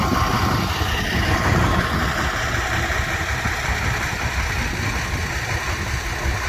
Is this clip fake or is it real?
real